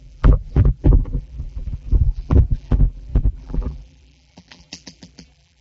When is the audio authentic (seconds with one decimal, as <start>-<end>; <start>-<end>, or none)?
none